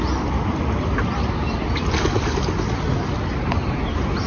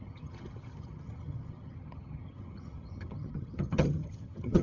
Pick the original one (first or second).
first